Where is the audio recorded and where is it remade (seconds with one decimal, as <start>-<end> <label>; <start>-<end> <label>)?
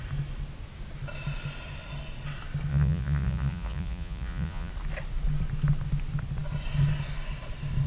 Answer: 0.0-2.7 recorded; 2.7-4.7 remade; 4.7-7.9 recorded